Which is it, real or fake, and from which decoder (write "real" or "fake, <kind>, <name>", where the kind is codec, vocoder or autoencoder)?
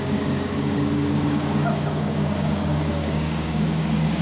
fake, codec, DAC